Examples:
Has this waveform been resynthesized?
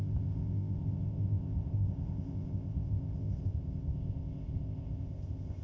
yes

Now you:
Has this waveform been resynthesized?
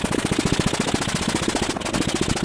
no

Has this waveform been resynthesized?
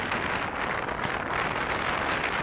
no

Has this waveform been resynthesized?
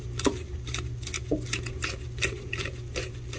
no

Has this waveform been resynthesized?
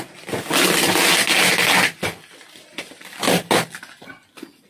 no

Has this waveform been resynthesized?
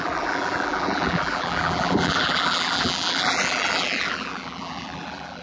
yes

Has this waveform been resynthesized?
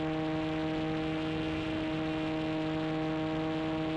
no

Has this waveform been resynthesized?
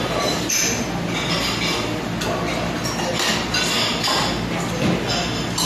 no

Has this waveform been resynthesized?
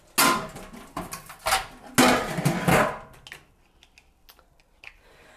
no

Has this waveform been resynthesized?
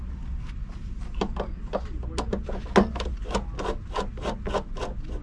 no